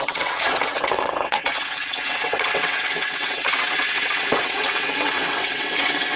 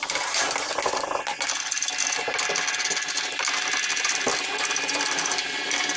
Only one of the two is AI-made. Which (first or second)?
first